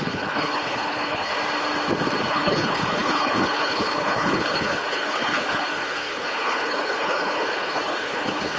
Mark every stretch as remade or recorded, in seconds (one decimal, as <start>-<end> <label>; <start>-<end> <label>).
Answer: 0.0-1.3 remade; 1.3-2.3 recorded; 2.3-8.6 remade